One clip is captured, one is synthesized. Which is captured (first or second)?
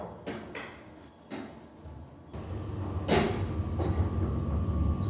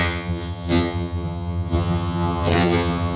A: first